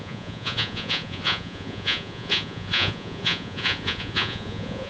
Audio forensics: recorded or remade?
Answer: remade